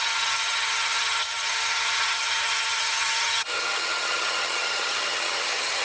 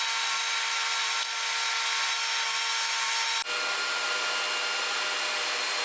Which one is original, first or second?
second